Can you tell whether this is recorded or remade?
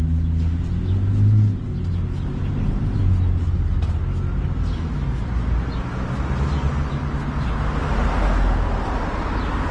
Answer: recorded